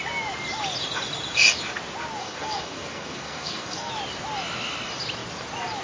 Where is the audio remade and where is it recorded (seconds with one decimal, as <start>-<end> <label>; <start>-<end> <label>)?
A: 0.0-2.2 recorded; 2.2-3.9 remade; 3.9-5.8 recorded